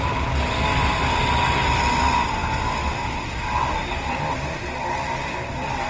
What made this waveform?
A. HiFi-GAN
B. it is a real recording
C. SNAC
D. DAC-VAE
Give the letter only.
B